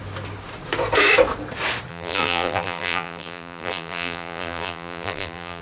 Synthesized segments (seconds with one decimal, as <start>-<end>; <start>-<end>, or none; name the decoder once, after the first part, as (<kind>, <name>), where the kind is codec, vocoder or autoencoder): 1.9-5.6 (vocoder, BigVGAN v2)